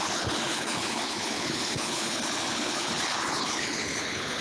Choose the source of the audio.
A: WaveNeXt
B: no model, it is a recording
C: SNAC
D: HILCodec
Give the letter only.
D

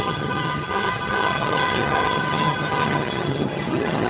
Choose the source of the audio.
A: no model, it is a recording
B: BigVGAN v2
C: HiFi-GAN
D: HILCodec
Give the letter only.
C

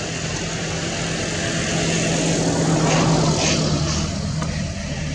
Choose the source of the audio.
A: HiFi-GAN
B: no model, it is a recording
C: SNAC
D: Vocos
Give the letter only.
B